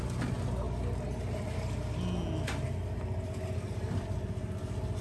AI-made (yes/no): no